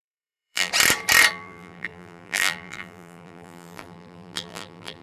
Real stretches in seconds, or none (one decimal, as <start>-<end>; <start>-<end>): 0.7-1.3